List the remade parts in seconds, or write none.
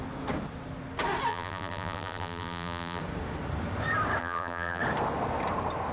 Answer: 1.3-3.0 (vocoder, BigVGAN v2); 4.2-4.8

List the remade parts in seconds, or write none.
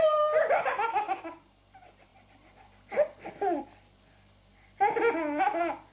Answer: none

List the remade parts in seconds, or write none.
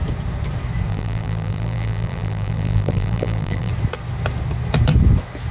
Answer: 0.9-3.7 (vocoder, BigVGAN v2)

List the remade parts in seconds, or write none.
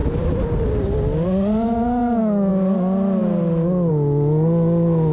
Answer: 0.0-0.5 (vocoder, BigVGAN v2)